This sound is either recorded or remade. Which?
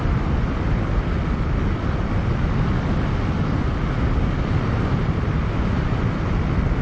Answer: recorded